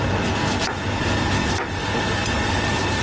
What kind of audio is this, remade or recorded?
recorded